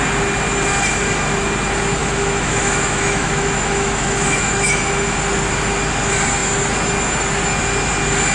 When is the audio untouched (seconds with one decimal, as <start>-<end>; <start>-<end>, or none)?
0.0-2.0; 4.8-8.3